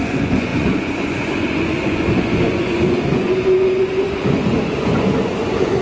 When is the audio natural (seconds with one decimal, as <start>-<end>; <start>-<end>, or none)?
none